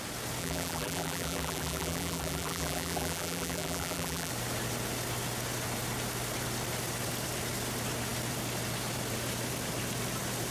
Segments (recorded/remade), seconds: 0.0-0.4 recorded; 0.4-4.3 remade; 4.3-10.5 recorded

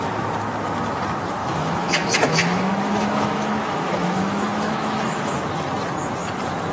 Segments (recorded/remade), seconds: 0.0-1.4 recorded; 1.4-5.4 remade; 5.4-6.7 recorded

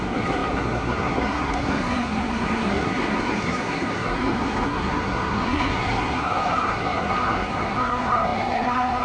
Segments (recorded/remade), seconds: 0.0-9.0 remade

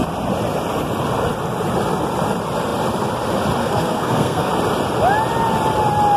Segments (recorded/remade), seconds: 0.0-3.6 recorded; 3.6-4.5 remade; 4.5-6.2 recorded

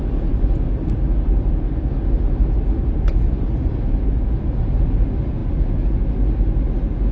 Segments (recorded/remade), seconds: 0.0-7.1 recorded